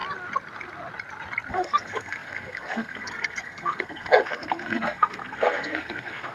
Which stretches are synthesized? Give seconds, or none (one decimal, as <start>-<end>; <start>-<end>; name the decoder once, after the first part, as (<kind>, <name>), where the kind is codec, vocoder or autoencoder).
1.5-6.3 (codec, SNAC)